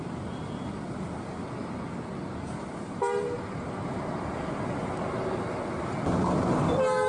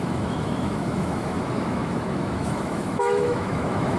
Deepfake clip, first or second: second